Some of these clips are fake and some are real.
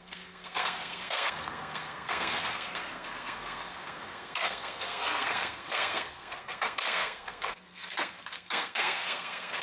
fake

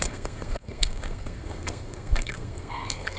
fake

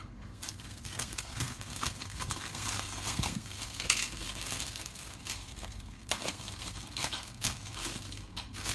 fake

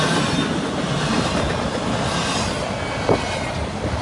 real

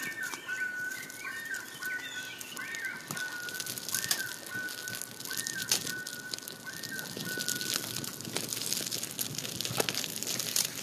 real